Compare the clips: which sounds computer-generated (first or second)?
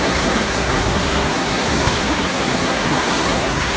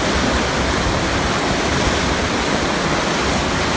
first